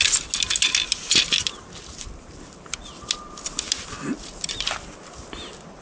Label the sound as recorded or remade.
recorded